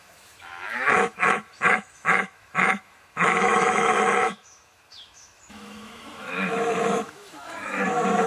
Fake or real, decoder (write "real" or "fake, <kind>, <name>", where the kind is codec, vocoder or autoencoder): fake, autoencoder, DAC-VAE